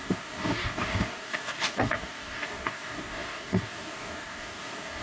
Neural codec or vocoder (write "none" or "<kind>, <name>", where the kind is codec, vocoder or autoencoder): codec, DAC